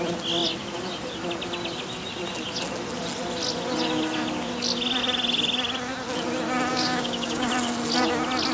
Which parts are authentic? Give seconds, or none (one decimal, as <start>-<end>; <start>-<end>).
0.0-6.7; 7.5-8.5